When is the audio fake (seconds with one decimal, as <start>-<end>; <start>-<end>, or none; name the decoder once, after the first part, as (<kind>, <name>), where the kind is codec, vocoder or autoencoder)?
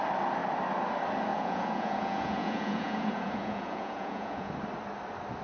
1.3-4.5 (vocoder, Vocos)